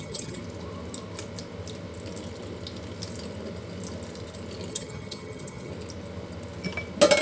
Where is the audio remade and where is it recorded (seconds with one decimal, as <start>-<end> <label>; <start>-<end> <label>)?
0.0-0.4 remade; 0.4-4.7 recorded; 4.7-5.7 remade; 5.7-7.2 recorded

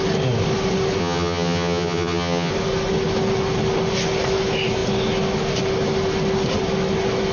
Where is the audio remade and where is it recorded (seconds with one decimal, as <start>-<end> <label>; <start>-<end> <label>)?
0.0-1.0 recorded; 1.0-2.5 remade; 2.5-7.3 recorded

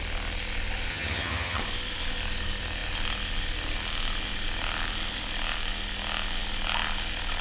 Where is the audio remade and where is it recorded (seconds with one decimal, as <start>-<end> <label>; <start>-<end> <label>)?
0.0-0.9 recorded; 0.9-1.6 remade; 1.6-7.4 recorded

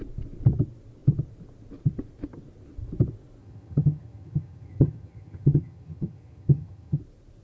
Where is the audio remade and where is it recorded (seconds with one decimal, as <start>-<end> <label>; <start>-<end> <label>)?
0.0-3.4 recorded; 3.4-7.0 remade; 7.0-7.4 recorded

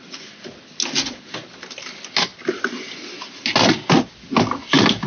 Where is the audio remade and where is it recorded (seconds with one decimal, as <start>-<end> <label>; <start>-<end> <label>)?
0.0-5.1 recorded

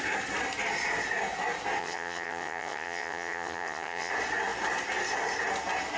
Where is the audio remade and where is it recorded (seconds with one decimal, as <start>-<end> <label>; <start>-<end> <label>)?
0.0-1.8 recorded; 1.8-4.1 remade; 4.1-6.0 recorded

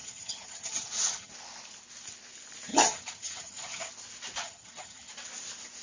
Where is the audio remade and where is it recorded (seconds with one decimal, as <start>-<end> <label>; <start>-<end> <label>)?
0.0-1.3 remade; 1.3-2.7 recorded; 2.7-3.9 remade; 3.9-4.4 recorded; 4.4-5.1 remade; 5.1-5.8 recorded